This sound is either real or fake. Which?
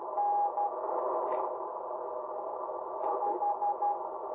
real